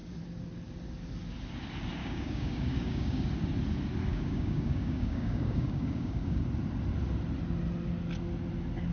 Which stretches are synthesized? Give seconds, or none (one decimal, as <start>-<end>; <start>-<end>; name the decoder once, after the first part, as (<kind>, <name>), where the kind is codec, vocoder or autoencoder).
2.0-3.2 (codec, DAC); 4.1-6.4